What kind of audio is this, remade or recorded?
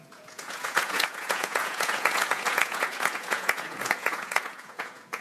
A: remade